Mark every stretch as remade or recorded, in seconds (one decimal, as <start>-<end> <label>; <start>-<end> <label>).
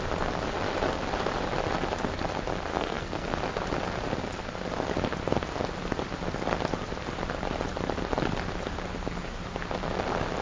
0.0-2.7 recorded; 2.7-3.4 remade; 3.4-10.4 recorded